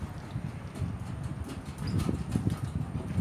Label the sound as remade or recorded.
recorded